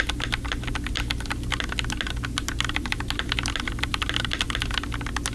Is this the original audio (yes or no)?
yes